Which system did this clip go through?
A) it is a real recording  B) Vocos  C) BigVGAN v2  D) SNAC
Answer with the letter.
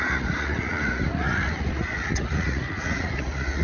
B